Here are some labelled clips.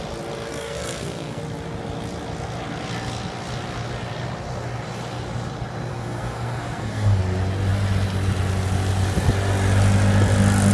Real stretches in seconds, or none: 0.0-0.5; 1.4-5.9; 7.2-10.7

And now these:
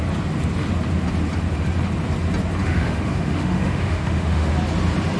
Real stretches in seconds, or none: 0.0-2.6; 4.5-5.2

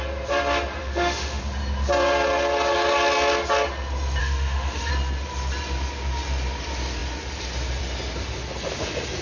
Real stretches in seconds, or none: 0.0-0.8; 1.4-4.2; 4.9-9.2

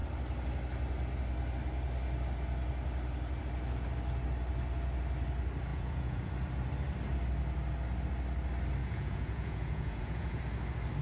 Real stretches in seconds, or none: 0.0-5.7; 6.3-8.8; 10.4-11.0

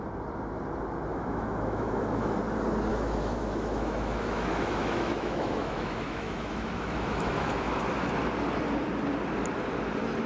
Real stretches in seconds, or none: 0.0-1.1; 2.4-2.9; 8.1-10.3

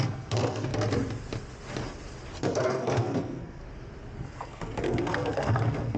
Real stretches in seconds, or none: 0.7-2.4; 3.6-4.2

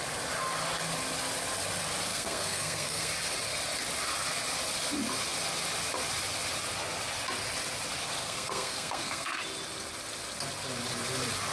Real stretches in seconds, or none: 0.0-2.1; 3.1-8.2; 9.4-11.5